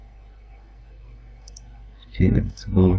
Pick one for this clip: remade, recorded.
remade